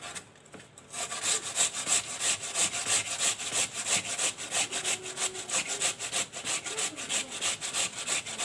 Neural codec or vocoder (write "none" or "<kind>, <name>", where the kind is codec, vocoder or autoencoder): none